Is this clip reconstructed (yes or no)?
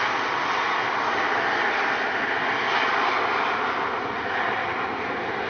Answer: no